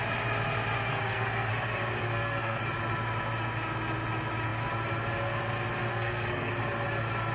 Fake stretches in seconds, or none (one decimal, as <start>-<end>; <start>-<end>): 0.9-1.5; 2.0-2.6; 5.9-6.5